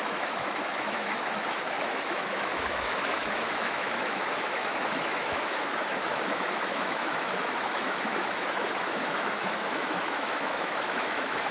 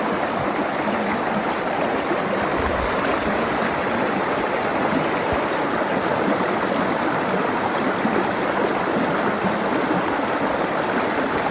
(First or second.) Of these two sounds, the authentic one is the second